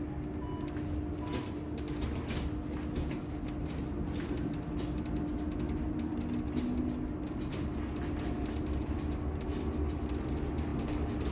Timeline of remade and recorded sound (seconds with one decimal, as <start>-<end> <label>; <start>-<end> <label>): 0.0-10.7 recorded; 10.7-11.3 remade